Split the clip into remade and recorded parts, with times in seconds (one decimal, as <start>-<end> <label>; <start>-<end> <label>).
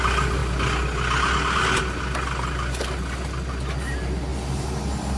0.0-5.2 recorded